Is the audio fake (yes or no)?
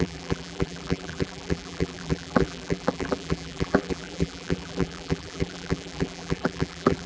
yes